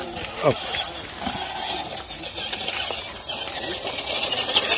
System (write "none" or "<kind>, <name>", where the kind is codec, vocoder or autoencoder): none